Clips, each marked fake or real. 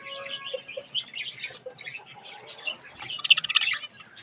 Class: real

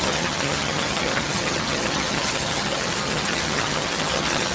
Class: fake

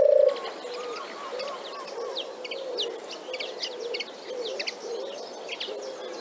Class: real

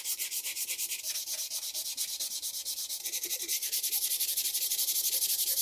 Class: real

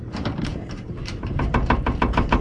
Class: fake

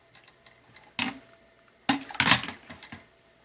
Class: real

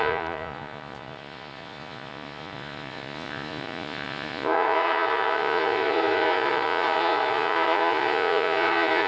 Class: fake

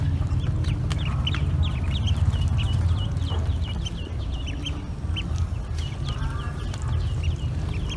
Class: real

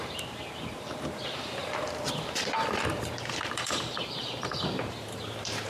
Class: fake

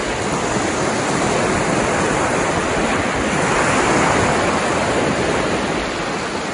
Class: real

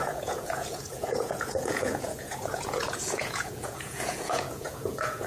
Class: fake